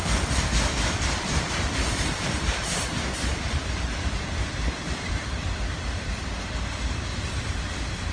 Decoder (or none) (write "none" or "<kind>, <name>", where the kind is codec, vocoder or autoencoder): vocoder, BigVGAN v2